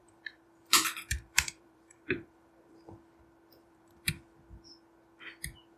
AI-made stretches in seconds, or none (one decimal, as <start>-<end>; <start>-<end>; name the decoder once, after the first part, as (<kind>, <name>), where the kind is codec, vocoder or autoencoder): 0.0-2.8 (vocoder, BigVGAN v2); 3.6-4.1

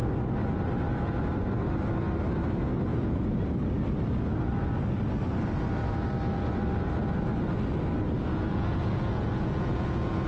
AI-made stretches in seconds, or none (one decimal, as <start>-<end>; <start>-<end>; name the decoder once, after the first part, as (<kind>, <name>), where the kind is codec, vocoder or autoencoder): 2.9-3.4 (vocoder, Vocos); 8.3-10.3